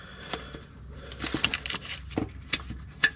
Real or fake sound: real